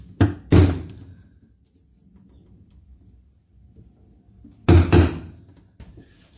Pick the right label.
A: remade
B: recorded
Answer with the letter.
B